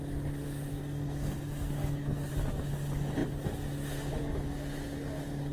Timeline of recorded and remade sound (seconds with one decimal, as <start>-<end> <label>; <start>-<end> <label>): 0.0-0.7 recorded; 0.7-2.3 remade; 2.3-5.5 recorded